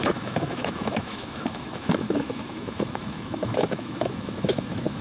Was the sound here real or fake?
fake